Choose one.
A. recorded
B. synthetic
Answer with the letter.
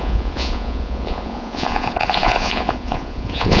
B